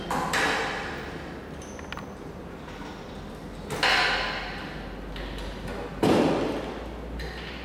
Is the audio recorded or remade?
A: recorded